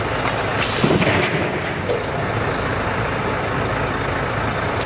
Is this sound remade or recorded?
recorded